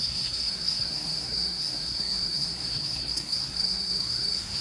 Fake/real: fake